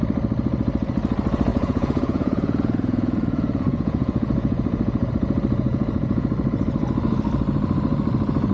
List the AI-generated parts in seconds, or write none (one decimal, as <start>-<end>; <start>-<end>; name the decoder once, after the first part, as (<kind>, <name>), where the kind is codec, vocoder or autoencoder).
1.5-5.1 (vocoder, Vocos); 5.7-6.3